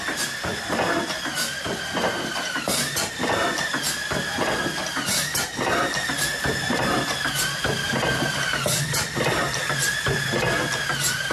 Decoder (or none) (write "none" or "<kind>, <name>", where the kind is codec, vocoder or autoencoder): none